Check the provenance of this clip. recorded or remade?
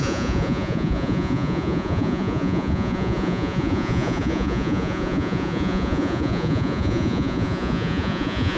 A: remade